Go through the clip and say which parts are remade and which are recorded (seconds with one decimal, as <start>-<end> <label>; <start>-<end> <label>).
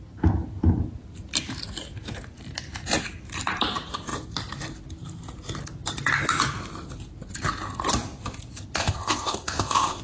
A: 0.0-8.8 recorded; 8.8-10.0 remade